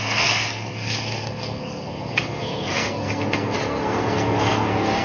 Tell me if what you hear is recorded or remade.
remade